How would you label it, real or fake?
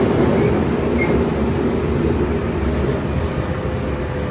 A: real